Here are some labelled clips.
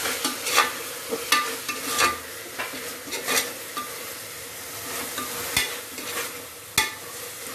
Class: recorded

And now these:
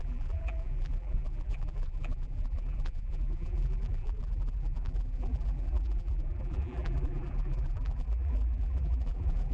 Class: remade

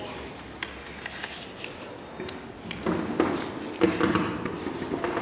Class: recorded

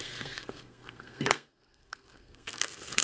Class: remade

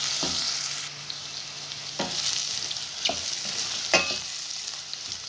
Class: recorded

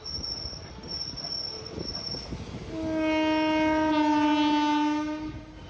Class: recorded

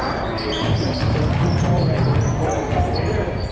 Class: recorded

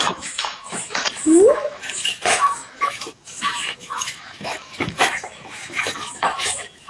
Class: remade